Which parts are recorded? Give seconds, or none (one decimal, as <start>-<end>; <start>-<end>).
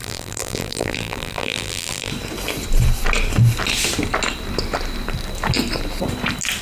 2.1-6.6